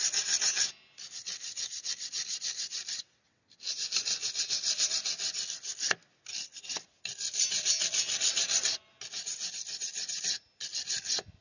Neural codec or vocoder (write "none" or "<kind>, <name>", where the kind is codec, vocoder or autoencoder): none